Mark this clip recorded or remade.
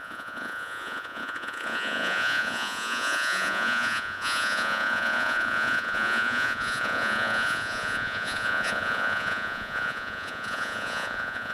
remade